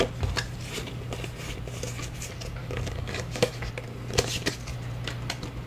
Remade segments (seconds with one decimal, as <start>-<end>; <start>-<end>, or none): 2.6-3.7